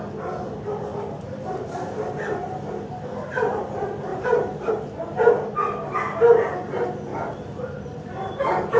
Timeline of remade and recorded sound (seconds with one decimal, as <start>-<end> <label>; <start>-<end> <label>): 0.0-0.9 recorded; 0.9-1.6 remade; 1.6-4.1 recorded; 4.1-4.7 remade; 4.7-7.1 recorded; 7.1-8.3 remade; 8.3-8.8 recorded